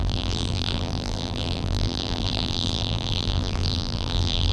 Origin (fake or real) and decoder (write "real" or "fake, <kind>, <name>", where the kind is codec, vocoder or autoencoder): fake, vocoder, BigVGAN v2